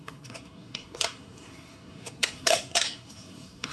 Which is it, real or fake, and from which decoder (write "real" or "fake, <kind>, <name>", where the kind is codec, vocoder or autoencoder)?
fake, codec, SNAC